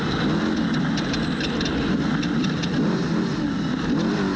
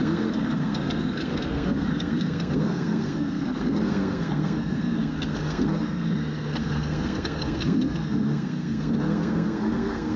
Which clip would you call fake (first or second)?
second